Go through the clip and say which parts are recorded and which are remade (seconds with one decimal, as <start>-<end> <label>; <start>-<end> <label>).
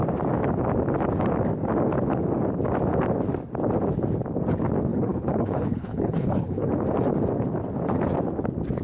0.0-4.9 recorded; 4.9-6.7 remade; 6.7-8.8 recorded